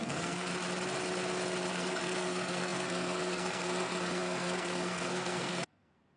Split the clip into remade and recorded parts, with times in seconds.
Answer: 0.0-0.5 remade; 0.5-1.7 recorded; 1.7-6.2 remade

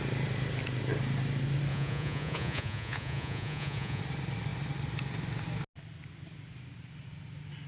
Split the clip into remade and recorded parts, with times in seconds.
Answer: 0.0-1.7 recorded; 1.7-4.0 remade; 4.0-7.7 recorded

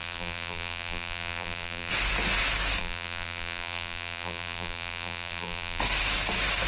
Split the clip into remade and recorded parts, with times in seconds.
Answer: 0.0-1.9 remade; 1.9-2.8 recorded; 2.8-5.8 remade; 5.8-6.7 recorded

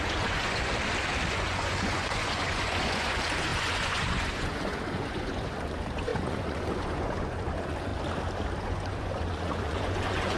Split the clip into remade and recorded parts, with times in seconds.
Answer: 0.0-0.7 remade; 0.7-1.3 recorded; 1.3-7.9 remade; 7.9-8.6 recorded; 8.6-10.4 remade